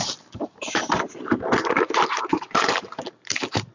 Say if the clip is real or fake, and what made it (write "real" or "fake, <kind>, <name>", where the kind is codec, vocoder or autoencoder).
fake, vocoder, BigVGAN v2